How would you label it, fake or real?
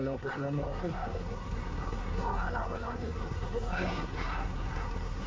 fake